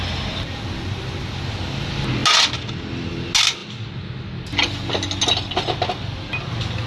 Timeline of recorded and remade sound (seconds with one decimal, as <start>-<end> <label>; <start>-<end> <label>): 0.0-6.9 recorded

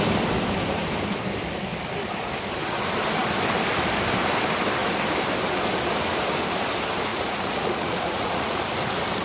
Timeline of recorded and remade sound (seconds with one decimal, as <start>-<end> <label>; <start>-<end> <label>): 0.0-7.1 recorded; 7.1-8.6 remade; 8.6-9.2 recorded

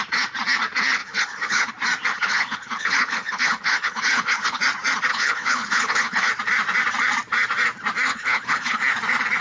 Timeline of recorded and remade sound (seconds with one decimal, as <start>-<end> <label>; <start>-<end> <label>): 0.0-1.0 recorded; 1.0-1.7 remade; 1.7-2.1 recorded; 2.1-4.6 remade; 4.6-5.1 recorded; 5.1-6.3 remade; 6.3-8.1 recorded; 8.1-8.8 remade; 8.8-9.4 recorded